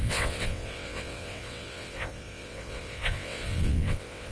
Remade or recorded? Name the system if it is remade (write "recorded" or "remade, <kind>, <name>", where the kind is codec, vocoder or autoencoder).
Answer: remade, vocoder, WaveNeXt